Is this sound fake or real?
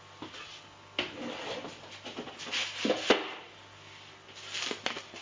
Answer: real